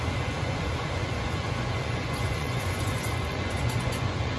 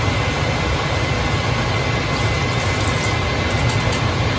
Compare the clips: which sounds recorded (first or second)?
second